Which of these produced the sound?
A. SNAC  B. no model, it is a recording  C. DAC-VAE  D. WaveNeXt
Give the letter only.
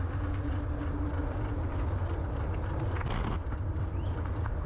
B